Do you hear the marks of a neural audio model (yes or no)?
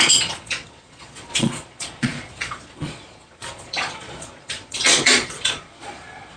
yes